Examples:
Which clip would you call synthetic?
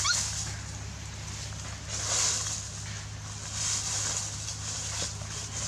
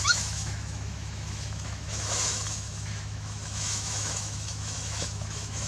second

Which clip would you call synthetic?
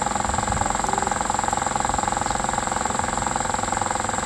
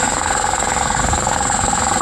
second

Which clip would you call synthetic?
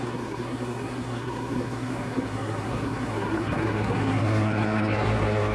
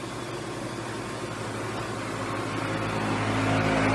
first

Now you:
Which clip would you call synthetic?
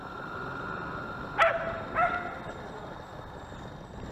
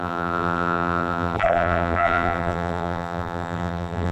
second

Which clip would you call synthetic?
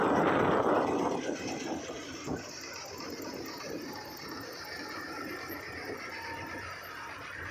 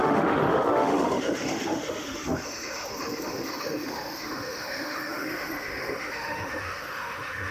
second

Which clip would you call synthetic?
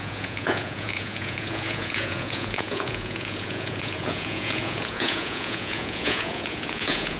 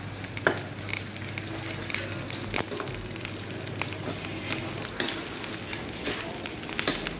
first